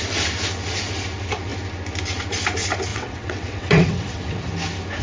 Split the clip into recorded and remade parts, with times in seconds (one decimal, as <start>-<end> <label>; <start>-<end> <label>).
0.0-2.9 recorded; 2.9-4.5 remade; 4.5-5.0 recorded